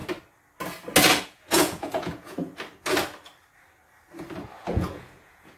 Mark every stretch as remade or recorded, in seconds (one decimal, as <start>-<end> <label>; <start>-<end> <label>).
0.0-1.2 recorded; 1.2-2.5 remade; 2.5-4.5 recorded; 4.5-5.6 remade

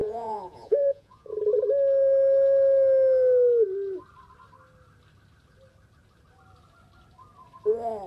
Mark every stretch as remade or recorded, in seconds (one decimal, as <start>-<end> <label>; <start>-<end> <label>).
0.0-1.3 remade; 1.3-8.1 recorded